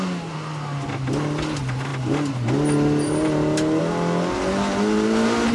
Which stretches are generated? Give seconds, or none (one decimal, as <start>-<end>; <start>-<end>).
none